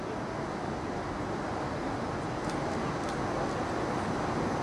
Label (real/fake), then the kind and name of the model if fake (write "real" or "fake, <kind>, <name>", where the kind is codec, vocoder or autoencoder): real